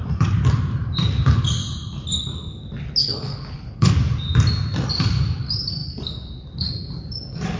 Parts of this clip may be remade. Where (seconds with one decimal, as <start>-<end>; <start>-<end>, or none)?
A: 3.0-3.9